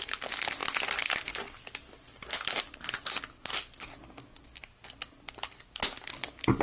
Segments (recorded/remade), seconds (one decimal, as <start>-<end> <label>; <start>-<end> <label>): 0.0-6.6 recorded